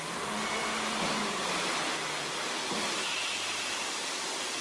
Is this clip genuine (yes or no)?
yes